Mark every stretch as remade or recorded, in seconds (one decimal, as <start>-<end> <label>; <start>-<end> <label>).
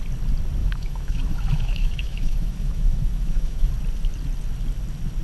0.0-0.6 recorded; 0.6-3.7 remade; 3.7-5.2 recorded